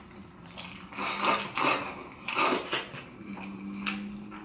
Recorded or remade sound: recorded